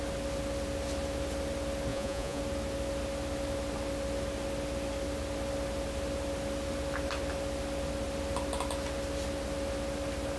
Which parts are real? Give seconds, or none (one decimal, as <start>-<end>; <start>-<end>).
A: 0.0-1.9; 2.4-10.4